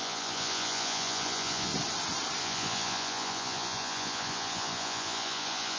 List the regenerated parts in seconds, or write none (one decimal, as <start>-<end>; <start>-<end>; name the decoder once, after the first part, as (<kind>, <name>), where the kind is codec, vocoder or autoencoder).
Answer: 0.0-1.7 (vocoder, Vocos); 2.4-5.8